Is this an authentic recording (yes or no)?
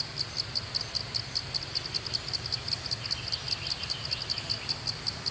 yes